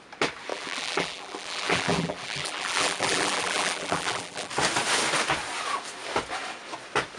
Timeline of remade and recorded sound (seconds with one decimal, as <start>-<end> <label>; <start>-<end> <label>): 0.0-0.5 recorded; 0.5-4.5 remade; 4.5-7.2 recorded